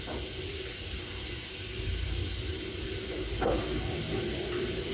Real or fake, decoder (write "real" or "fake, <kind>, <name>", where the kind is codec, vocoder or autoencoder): real